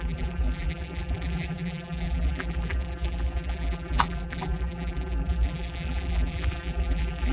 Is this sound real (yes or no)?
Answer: no